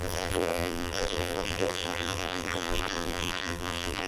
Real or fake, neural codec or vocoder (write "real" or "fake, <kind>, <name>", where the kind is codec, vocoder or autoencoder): fake, vocoder, BigVGAN v2